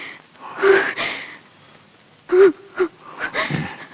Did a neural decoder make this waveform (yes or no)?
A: no